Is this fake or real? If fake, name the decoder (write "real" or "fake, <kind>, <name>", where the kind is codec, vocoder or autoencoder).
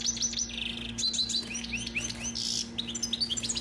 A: real